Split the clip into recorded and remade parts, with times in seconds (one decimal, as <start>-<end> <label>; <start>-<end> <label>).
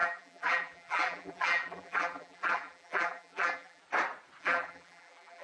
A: 0.0-3.8 remade; 3.8-4.4 recorded; 4.4-5.4 remade